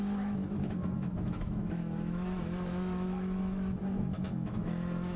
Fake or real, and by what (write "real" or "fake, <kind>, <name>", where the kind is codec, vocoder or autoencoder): fake, autoencoder, DAC-VAE